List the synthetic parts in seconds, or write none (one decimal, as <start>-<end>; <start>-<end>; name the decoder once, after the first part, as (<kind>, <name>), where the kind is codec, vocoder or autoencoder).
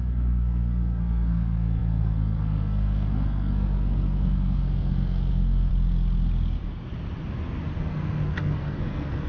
0.0-5.7 (codec, SNAC); 7.8-9.3